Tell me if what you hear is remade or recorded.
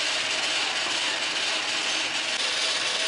recorded